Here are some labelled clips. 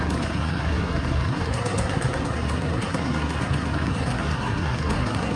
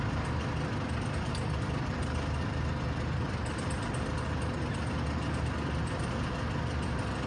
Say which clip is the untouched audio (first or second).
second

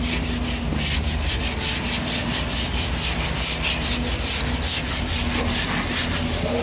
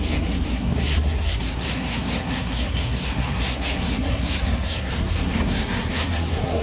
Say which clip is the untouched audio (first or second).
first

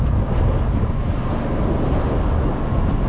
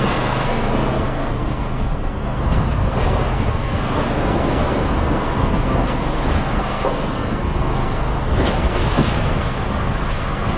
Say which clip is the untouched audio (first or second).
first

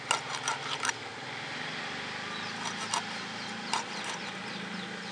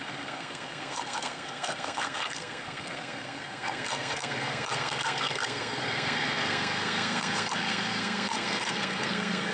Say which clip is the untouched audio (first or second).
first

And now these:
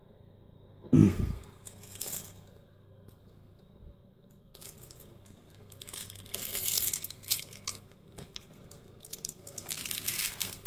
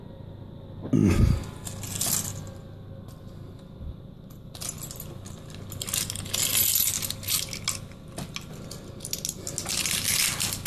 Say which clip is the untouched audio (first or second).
second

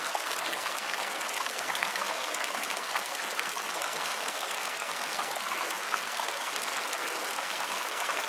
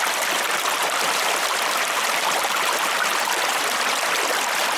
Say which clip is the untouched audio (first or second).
second